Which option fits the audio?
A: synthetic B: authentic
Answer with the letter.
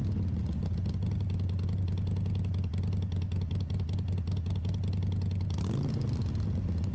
B